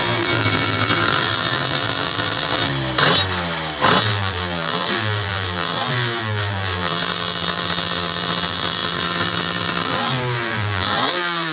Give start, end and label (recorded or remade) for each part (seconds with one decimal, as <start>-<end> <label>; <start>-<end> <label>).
0.0-2.7 remade; 2.7-4.0 recorded; 4.0-11.5 remade